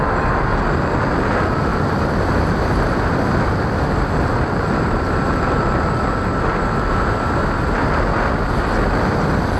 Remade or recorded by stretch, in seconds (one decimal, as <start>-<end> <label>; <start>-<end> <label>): 0.0-9.6 recorded

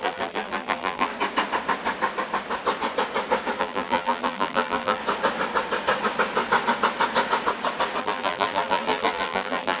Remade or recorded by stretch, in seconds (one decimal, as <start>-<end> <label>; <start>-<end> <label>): 0.0-1.1 remade; 1.1-3.6 recorded; 3.6-5.0 remade; 5.0-8.0 recorded; 8.0-9.8 remade

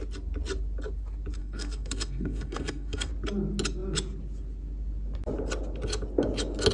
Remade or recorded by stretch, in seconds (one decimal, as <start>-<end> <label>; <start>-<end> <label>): 0.0-1.4 recorded; 1.4-3.1 remade; 3.1-6.7 recorded

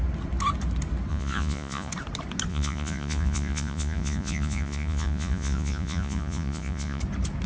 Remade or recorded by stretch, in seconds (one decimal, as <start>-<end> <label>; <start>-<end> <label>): 0.0-1.1 recorded; 1.1-1.9 remade; 1.9-2.5 recorded; 2.5-7.0 remade; 7.0-7.5 recorded

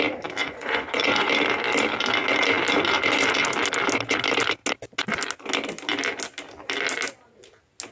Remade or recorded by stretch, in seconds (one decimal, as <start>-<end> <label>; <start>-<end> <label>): 0.0-0.4 recorded; 0.4-1.3 remade; 1.3-7.9 recorded

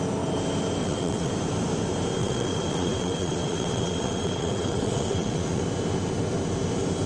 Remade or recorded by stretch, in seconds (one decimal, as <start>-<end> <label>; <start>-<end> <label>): 0.0-0.8 recorded; 0.8-1.3 remade; 1.3-2.2 recorded; 2.2-5.6 remade; 5.6-7.1 recorded

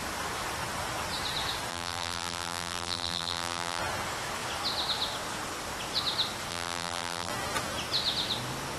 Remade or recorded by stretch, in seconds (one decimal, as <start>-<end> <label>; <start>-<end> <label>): 0.0-1.7 recorded; 1.7-3.8 remade; 3.8-6.5 recorded; 6.5-7.3 remade; 7.3-8.8 recorded